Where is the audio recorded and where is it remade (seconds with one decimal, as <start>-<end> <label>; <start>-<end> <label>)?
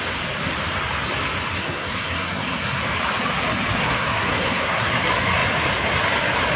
0.0-1.6 recorded; 1.6-2.8 remade; 2.8-3.8 recorded; 3.8-4.9 remade; 4.9-6.6 recorded